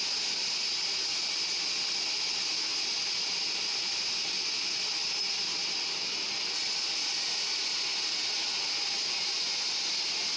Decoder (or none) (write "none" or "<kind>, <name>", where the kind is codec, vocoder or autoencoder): none